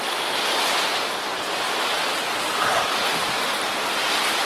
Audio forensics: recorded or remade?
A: recorded